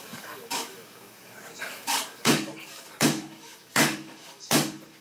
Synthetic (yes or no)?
yes